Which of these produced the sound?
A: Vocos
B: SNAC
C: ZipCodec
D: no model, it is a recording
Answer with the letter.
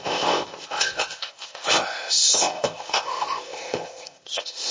C